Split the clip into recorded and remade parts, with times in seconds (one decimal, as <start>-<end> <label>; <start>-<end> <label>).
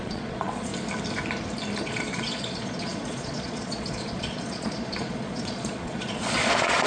0.0-0.7 remade; 0.7-1.8 recorded; 1.8-6.9 remade